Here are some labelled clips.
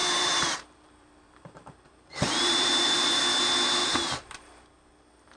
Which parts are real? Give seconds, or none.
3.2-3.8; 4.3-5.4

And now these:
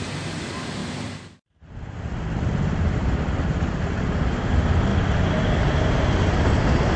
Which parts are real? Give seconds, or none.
0.0-0.8; 4.5-4.9; 5.7-7.0

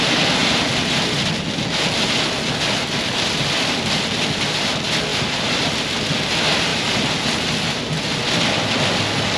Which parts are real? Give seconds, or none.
0.0-5.1; 5.7-6.7; 7.7-9.4

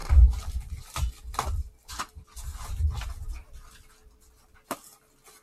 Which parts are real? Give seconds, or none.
1.9-2.5; 4.1-5.4

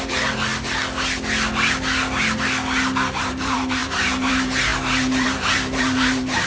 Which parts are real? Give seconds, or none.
0.5-3.2

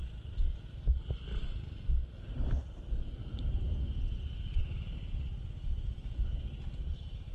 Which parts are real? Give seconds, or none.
0.0-3.2; 3.8-7.3

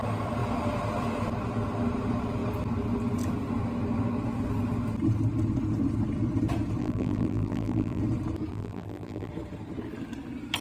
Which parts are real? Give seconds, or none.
0.0-6.8; 8.0-8.5; 9.3-10.6